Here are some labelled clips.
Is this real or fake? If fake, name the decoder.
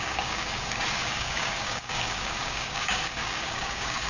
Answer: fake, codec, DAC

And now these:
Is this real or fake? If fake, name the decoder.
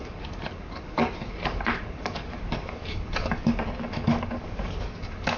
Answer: fake, codec, DAC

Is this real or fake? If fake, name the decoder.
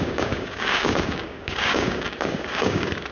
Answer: fake, codec, DAC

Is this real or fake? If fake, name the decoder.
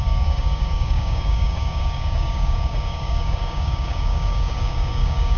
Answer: fake, codec, DAC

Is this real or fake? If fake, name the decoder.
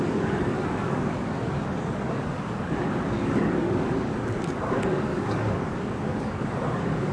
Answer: fake, codec, DAC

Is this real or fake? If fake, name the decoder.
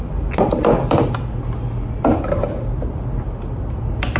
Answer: real